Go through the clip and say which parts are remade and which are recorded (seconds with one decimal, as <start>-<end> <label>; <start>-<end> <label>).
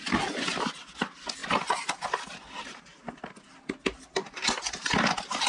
0.0-5.5 recorded